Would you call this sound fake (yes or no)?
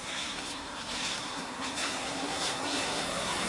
yes